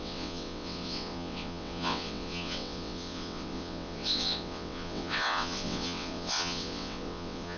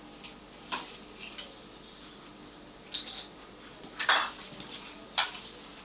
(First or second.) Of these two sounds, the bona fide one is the second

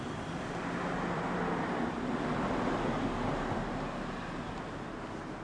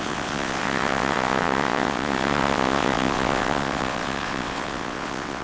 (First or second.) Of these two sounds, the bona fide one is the first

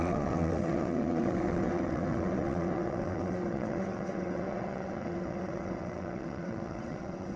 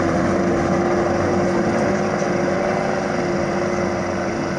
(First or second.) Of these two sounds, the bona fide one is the second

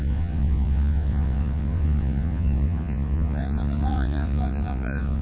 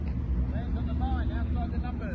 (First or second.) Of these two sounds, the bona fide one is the second